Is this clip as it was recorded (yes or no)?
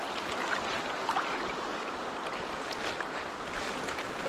yes